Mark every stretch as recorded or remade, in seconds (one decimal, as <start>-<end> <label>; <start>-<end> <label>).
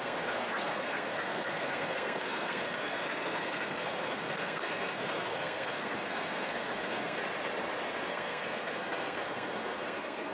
0.0-7.2 remade; 7.2-8.1 recorded; 8.1-10.3 remade